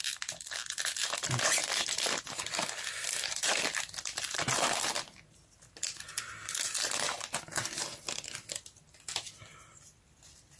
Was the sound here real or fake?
real